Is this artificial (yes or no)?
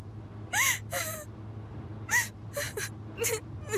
yes